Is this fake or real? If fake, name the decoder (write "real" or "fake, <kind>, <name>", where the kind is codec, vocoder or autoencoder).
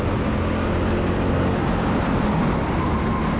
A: real